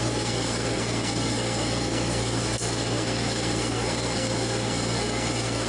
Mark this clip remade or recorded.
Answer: remade